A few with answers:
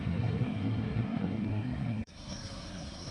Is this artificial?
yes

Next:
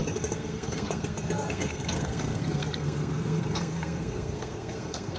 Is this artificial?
yes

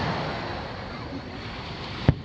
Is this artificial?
no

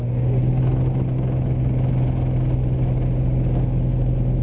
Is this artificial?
no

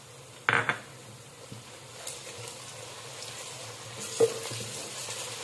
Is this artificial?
no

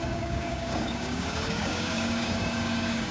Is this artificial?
yes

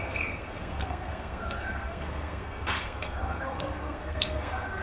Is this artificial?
yes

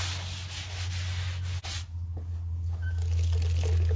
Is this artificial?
no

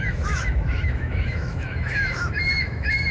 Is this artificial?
yes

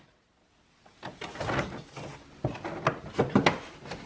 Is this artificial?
no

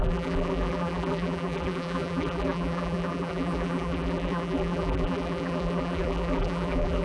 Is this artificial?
yes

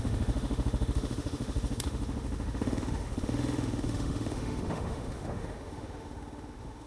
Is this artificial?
yes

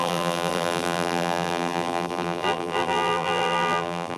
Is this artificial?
yes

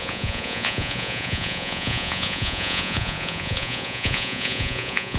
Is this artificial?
yes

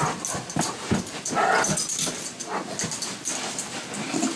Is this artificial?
no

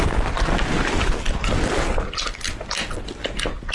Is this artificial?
no